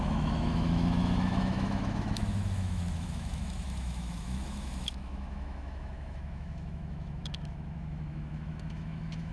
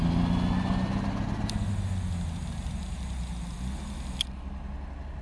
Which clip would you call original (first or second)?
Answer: second